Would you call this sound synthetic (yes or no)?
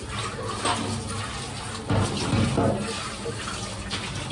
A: no